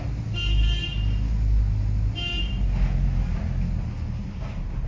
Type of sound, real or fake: real